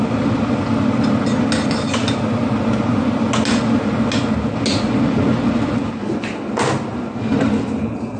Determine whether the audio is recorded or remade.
recorded